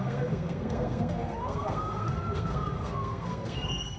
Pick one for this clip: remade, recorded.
remade